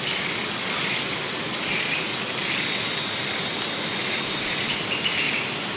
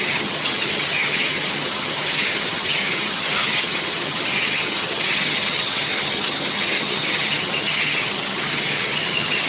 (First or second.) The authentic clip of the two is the first